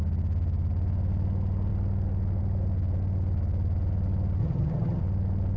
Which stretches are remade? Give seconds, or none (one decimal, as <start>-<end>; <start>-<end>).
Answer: 4.4-5.0